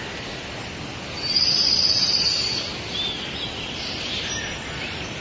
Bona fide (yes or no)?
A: yes